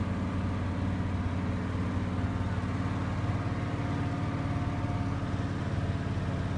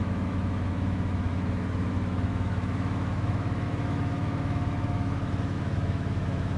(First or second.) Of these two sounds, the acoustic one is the first